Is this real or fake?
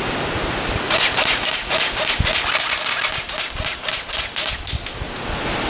real